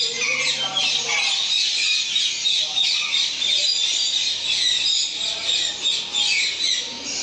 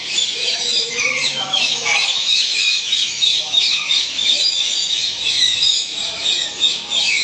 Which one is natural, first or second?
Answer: first